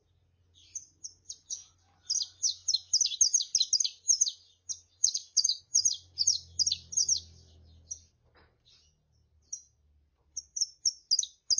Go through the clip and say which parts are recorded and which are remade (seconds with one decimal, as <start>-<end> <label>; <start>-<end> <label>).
0.0-5.0 recorded; 5.0-5.6 remade; 5.6-11.6 recorded